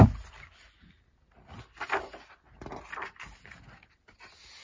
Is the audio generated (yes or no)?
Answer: no